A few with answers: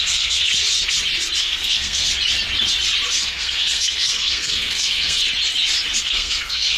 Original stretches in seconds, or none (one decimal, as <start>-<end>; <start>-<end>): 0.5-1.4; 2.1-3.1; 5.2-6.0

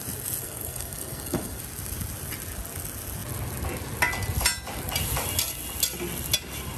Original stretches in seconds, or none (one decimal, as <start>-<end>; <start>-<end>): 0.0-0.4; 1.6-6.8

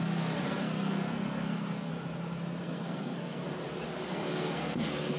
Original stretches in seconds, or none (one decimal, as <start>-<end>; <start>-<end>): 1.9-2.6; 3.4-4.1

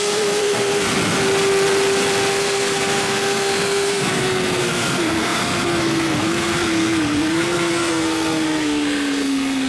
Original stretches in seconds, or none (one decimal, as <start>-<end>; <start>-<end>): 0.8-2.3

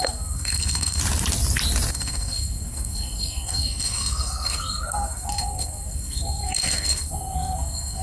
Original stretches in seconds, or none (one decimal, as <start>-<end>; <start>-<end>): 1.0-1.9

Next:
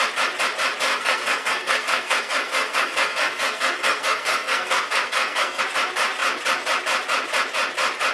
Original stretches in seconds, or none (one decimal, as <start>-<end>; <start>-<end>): 0.0-0.9; 5.6-8.1

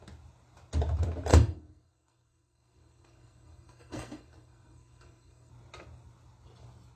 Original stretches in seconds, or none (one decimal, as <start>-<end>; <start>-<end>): 0.0-1.3; 5.5-7.0